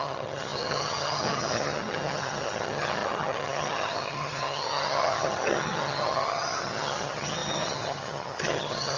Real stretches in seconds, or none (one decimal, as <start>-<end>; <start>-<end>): none